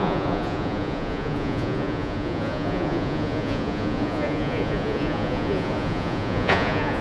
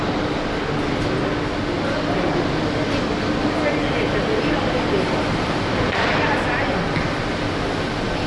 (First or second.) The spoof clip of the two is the first